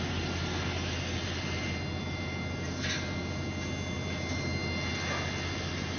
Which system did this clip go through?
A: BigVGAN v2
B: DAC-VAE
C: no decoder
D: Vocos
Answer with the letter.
C